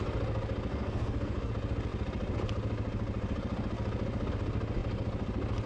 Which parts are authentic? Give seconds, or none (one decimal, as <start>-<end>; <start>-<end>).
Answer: 0.0-0.7; 1.5-5.7